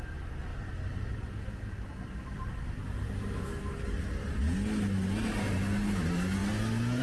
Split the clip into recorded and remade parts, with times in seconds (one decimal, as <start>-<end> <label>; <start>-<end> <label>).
0.0-7.0 recorded